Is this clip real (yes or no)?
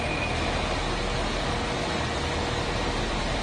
yes